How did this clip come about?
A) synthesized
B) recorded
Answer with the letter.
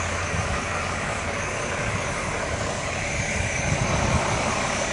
A